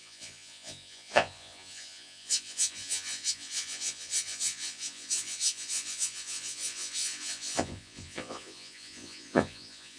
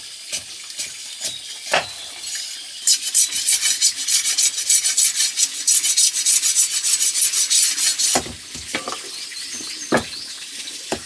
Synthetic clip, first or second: first